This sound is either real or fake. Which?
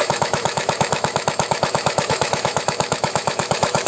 fake